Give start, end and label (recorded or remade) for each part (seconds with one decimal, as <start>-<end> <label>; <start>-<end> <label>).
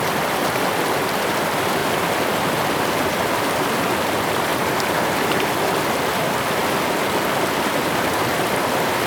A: 0.0-1.8 recorded; 1.8-3.7 remade; 3.7-4.5 recorded; 4.5-5.5 remade; 5.5-9.1 recorded